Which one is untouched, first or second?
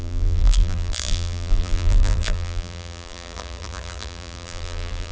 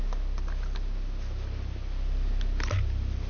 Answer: second